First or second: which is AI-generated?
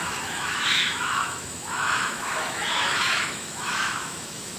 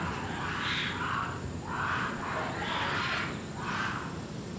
first